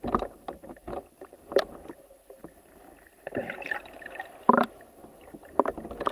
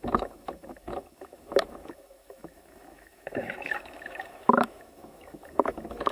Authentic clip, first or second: first